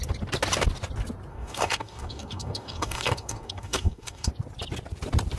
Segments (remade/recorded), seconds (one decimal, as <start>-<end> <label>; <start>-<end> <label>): 0.0-1.3 recorded; 1.3-4.3 remade; 4.3-5.4 recorded